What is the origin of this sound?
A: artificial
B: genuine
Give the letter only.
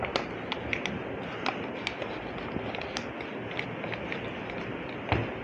B